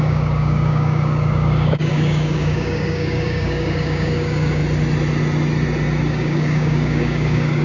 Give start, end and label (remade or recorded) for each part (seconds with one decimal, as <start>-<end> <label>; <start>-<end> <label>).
0.0-4.6 remade; 4.6-6.1 recorded; 6.1-7.6 remade